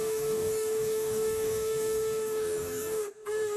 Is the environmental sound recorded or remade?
remade